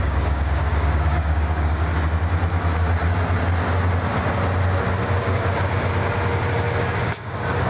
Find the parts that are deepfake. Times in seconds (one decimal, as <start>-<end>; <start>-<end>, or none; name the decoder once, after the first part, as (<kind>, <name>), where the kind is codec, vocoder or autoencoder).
0.0-1.8 (codec, DAC); 5.0-5.4; 6.9-7.7